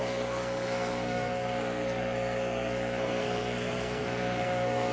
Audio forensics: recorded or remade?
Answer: remade